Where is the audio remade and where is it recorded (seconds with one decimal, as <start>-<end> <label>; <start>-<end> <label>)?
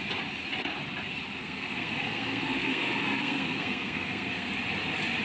0.0-1.4 recorded; 1.4-4.5 remade; 4.5-5.2 recorded